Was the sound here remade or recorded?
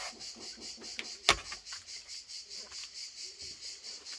recorded